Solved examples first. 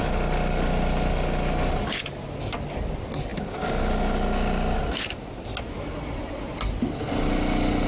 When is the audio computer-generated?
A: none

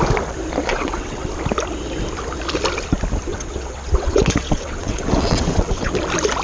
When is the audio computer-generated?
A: 0.7-1.3; 3.3-5.9

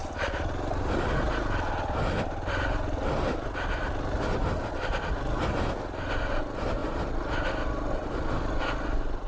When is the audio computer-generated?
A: none

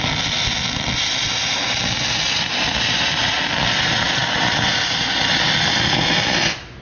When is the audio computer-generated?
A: none

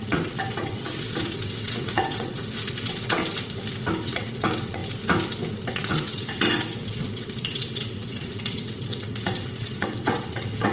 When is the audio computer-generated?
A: 0.0-3.2; 4.0-4.8; 5.7-10.7

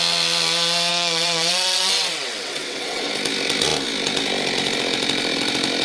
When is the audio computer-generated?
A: 0.9-3.1

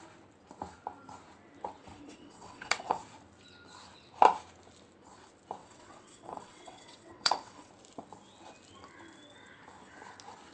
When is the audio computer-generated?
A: 1.8-3.0; 5.6-7.7